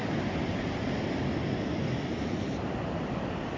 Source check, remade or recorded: recorded